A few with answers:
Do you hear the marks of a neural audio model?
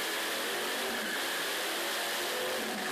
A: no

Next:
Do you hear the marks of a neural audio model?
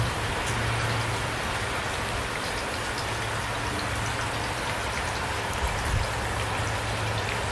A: no